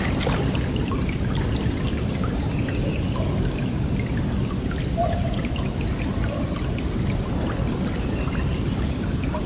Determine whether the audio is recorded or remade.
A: recorded